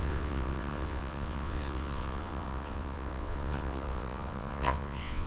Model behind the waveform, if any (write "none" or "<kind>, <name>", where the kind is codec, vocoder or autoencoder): vocoder, WaveNeXt